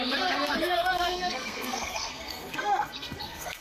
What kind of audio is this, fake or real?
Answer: fake